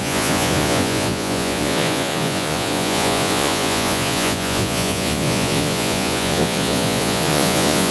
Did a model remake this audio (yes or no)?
yes